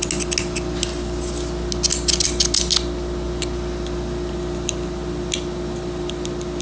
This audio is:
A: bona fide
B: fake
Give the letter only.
A